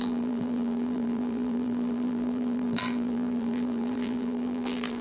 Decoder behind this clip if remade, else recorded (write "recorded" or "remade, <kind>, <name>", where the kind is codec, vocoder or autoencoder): remade, vocoder, BigVGAN v2